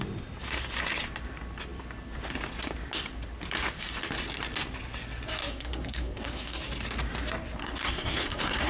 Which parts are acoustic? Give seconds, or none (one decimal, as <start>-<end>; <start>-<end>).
0.0-5.5; 6.6-7.6